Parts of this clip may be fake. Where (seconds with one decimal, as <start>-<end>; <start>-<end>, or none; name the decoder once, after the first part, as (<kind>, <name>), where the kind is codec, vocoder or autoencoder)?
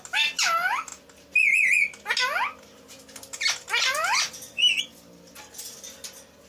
none